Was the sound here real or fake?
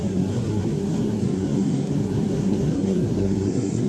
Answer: fake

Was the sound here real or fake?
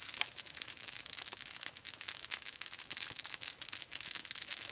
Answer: fake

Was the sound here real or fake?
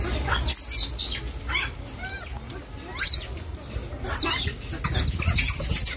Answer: real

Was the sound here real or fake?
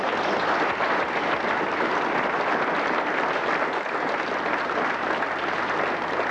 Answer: real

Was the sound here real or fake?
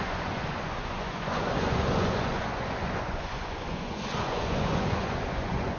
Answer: fake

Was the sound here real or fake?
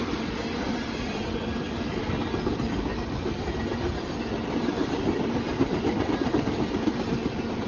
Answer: fake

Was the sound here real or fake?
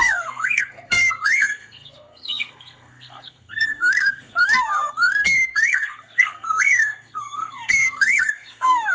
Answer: fake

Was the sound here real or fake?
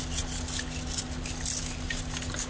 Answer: real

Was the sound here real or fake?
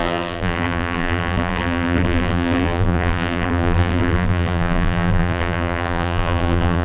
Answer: fake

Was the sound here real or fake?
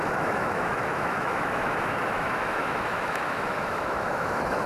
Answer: fake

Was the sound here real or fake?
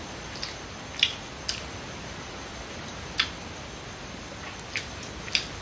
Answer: real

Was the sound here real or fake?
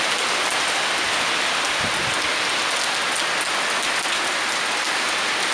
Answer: real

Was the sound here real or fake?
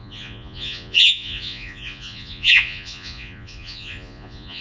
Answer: fake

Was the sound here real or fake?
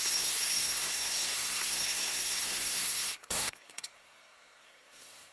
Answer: fake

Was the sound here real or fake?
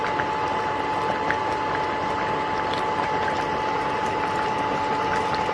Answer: real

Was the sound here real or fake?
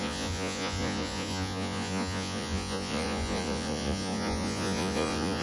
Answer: fake